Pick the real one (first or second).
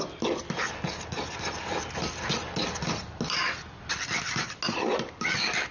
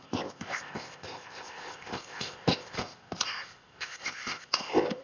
first